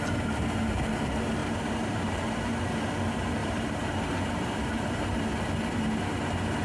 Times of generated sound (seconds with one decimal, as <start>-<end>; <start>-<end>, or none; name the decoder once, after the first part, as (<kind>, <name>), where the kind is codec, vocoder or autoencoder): 1.4-2.6 (vocoder, BigVGAN v2); 3.4-5.2